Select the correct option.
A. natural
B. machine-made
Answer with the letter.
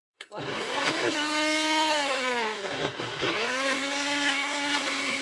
B